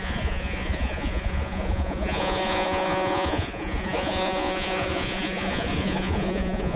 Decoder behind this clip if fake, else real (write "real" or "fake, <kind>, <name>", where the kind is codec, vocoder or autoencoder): fake, vocoder, Vocos